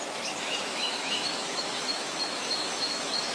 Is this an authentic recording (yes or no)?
no